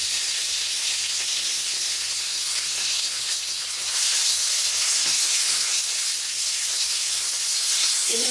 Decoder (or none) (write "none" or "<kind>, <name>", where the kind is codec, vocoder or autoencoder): codec, SNAC